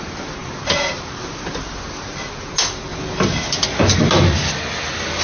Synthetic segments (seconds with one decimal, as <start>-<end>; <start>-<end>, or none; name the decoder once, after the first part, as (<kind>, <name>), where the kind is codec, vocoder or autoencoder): none